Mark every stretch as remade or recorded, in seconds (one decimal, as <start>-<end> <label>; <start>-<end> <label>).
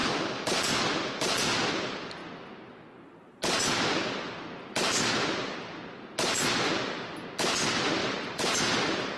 0.0-8.0 recorded; 8.0-8.6 remade; 8.6-9.2 recorded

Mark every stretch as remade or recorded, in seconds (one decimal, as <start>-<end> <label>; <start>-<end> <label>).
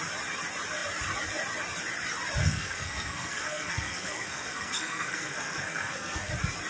0.0-2.4 recorded; 2.4-6.3 remade; 6.3-6.7 recorded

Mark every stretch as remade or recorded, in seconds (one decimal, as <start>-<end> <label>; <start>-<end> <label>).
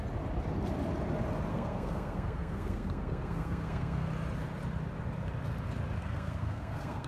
0.0-1.5 recorded; 1.5-4.1 remade; 4.1-6.0 recorded; 6.0-7.1 remade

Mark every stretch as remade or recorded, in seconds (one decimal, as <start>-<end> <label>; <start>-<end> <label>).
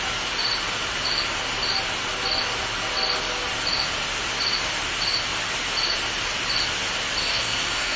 0.0-7.2 recorded; 7.2-8.0 remade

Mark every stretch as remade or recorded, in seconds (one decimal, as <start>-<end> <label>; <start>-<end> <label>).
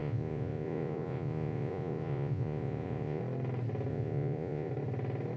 0.0-3.2 remade; 3.2-3.9 recorded; 3.9-4.7 remade; 4.7-5.4 recorded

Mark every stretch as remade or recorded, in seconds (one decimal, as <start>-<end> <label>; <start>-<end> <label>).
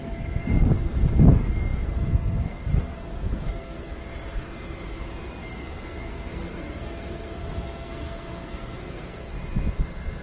0.0-4.0 remade; 4.0-5.3 recorded; 5.3-9.4 remade; 9.4-10.2 recorded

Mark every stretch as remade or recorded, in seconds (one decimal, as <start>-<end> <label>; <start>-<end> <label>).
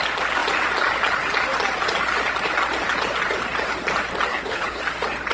0.0-4.3 recorded; 4.3-4.8 remade; 4.8-5.3 recorded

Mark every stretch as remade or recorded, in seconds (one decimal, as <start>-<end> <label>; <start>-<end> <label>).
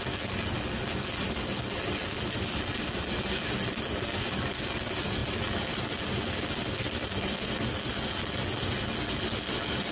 0.0-9.9 recorded